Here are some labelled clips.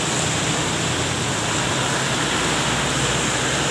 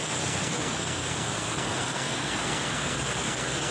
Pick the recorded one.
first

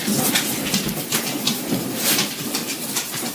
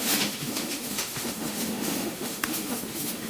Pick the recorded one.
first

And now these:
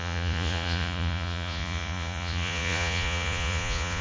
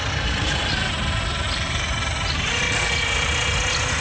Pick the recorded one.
second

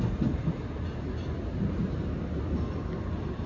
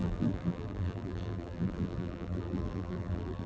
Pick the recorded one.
first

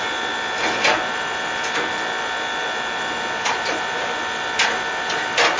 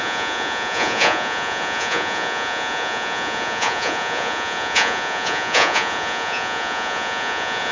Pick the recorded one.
first